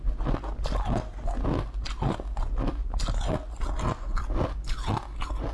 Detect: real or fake real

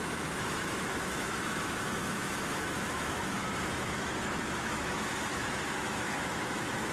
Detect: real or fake fake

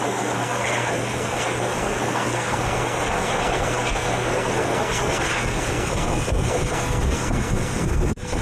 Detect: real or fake fake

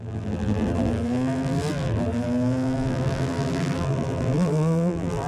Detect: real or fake fake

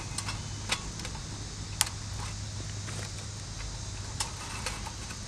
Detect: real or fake real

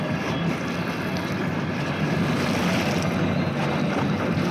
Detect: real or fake real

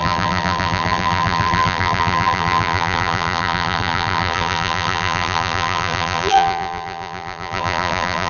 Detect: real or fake fake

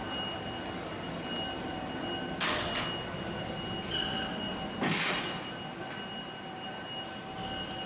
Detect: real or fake real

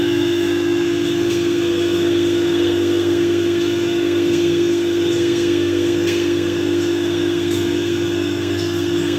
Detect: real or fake fake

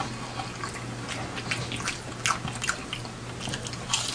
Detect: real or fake real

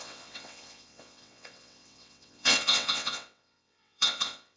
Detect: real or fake fake